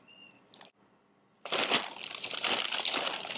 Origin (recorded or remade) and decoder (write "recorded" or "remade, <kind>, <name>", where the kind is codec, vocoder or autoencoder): recorded